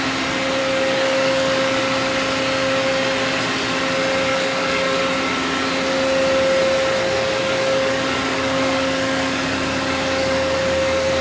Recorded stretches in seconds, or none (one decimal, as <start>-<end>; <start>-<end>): 0.0-0.6; 1.8-4.3; 5.0-7.0